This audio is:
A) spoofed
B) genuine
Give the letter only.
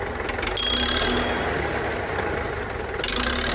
B